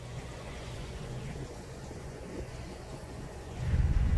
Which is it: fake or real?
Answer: fake